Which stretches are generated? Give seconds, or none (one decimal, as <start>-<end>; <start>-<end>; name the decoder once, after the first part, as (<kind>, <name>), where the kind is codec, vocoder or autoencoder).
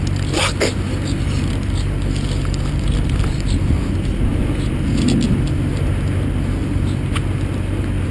none